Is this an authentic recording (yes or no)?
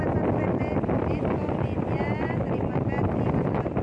yes